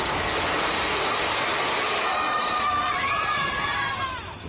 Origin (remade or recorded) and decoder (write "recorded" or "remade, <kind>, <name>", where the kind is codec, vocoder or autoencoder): recorded